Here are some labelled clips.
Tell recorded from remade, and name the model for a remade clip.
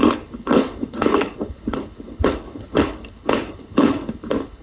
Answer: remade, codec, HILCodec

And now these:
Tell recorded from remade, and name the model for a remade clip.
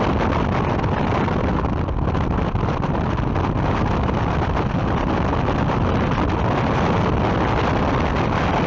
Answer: recorded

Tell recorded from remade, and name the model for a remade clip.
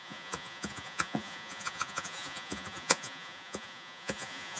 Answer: remade, vocoder, Vocos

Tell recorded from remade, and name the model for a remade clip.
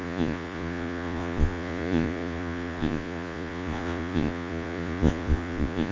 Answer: remade, vocoder, Vocos